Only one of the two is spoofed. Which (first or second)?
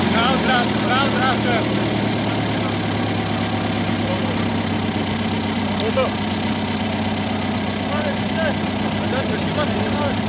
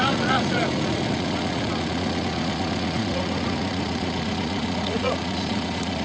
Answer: second